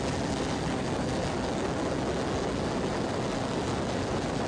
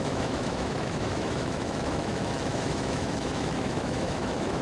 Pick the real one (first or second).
first